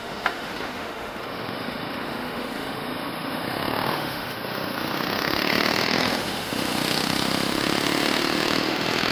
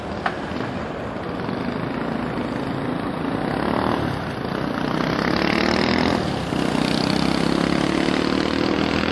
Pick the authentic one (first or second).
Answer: second